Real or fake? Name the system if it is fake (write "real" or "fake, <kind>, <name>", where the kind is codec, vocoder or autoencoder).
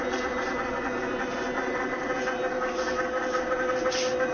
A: real